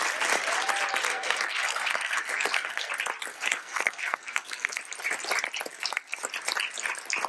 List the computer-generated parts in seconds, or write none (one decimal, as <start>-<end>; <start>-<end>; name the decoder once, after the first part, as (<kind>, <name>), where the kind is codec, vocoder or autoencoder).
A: 1.1-2.9 (codec, SNAC); 3.3-4.8; 5.7-6.2